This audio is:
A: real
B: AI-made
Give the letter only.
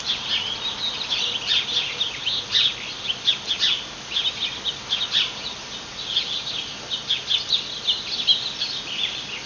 A